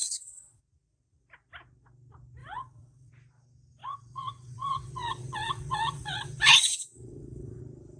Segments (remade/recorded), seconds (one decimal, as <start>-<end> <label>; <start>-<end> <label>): 0.0-0.6 remade; 0.6-2.4 recorded; 2.4-3.1 remade; 3.1-3.8 recorded; 3.8-7.6 remade; 7.6-8.0 recorded